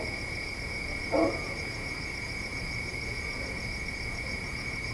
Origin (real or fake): fake